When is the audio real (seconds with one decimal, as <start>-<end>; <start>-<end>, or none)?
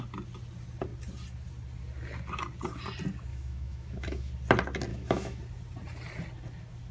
0.0-3.3; 4.3-4.9; 5.4-6.9